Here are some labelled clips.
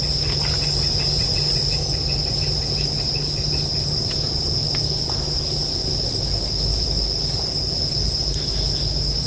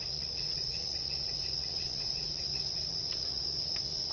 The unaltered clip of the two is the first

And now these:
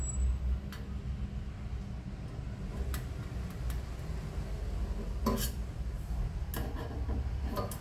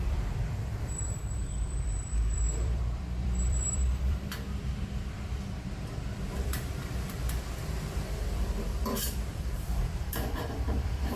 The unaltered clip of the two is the first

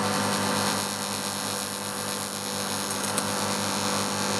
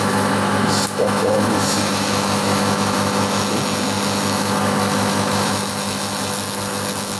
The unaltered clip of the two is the first